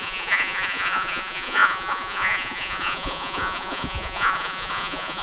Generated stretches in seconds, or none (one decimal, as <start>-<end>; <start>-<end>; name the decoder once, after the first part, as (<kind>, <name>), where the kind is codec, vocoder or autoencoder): 0.0-5.2 (vocoder, Vocos)